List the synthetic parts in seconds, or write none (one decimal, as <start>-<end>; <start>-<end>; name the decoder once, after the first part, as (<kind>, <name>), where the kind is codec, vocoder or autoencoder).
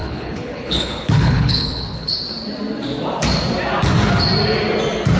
0.0-2.1 (codec, HILCodec)